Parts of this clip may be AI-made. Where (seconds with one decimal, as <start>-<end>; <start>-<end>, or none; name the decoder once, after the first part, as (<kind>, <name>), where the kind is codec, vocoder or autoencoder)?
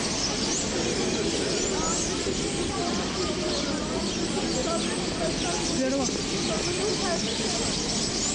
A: 4.6-5.7 (vocoder, BigVGAN v2)